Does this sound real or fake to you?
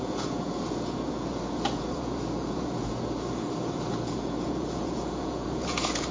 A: fake